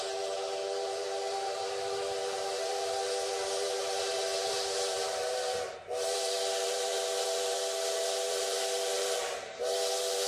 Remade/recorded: remade